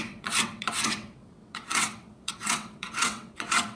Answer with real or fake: fake